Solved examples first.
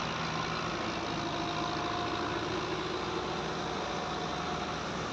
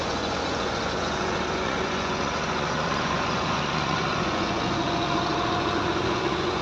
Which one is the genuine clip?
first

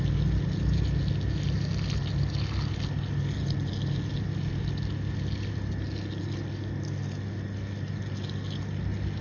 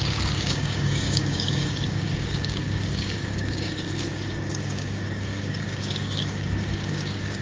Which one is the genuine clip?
first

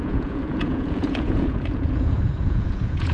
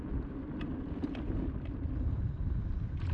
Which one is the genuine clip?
second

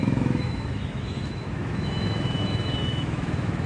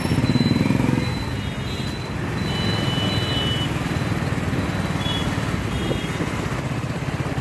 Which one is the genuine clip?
second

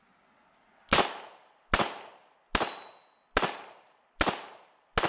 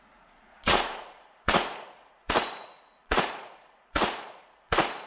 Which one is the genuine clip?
first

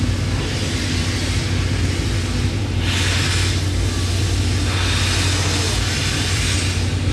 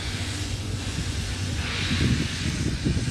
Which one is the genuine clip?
first